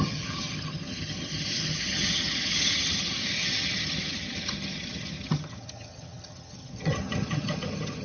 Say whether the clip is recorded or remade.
remade